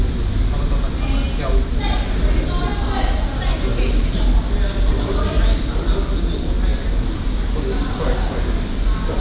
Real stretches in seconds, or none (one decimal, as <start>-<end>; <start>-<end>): 0.0-9.2